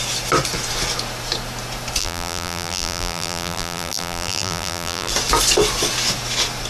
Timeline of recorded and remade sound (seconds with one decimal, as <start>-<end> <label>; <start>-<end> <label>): 0.0-2.0 recorded; 2.0-5.1 remade; 5.1-6.7 recorded